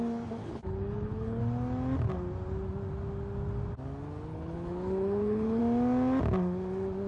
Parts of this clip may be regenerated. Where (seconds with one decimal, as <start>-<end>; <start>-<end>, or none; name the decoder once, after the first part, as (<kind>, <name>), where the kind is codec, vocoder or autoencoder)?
0.4-1.4 (codec, HILCodec); 4.3-5.6